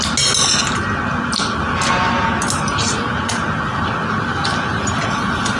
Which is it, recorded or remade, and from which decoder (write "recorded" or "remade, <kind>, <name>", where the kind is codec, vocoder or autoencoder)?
recorded